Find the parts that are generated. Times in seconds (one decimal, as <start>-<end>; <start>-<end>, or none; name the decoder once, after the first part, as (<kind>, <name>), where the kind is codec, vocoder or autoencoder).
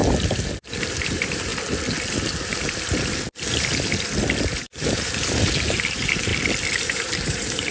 0.6-1.5 (vocoder, BigVGAN v2); 4.6-6.3; 6.8-7.7